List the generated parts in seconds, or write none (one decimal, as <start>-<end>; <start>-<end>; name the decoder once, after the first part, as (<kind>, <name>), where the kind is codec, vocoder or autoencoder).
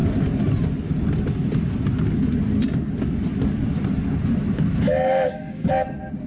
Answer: 4.9-5.7 (codec, DAC)